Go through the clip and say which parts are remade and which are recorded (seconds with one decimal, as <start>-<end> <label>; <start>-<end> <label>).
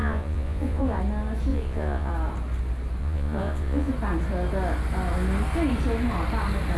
0.0-1.0 remade; 1.0-1.5 recorded; 1.5-2.1 remade; 2.1-3.0 recorded; 3.0-3.9 remade; 3.9-6.8 recorded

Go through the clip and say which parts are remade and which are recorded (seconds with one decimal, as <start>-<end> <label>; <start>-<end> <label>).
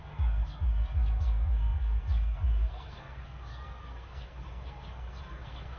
0.0-5.8 remade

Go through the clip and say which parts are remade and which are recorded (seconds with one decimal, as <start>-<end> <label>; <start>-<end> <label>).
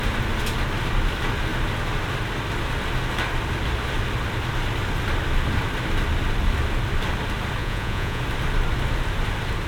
0.0-7.6 recorded; 7.6-8.2 remade; 8.2-9.7 recorded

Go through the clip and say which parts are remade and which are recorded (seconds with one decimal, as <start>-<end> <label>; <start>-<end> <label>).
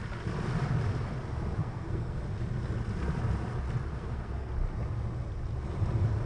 0.0-1.6 recorded; 1.6-2.2 remade; 2.2-3.9 recorded; 3.9-4.5 remade; 4.5-6.3 recorded